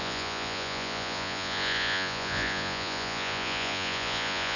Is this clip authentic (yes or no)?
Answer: no